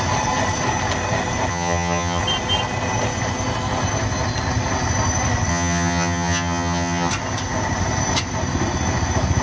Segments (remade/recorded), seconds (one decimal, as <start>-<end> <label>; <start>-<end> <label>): 0.0-1.5 recorded; 1.5-2.2 remade; 2.2-5.5 recorded; 5.5-7.1 remade; 7.1-9.4 recorded